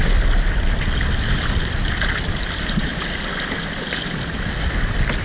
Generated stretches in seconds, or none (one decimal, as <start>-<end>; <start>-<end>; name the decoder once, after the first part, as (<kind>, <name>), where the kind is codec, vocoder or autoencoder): none